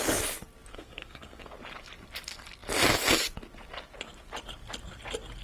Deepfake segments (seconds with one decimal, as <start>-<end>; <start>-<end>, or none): 0.7-1.5